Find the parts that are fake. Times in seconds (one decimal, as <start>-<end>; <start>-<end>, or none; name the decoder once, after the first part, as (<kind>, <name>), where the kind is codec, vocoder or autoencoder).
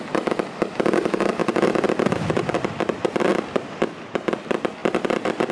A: 1.4-2.4 (vocoder, BigVGAN v2); 3.3-4.3; 4.8-5.5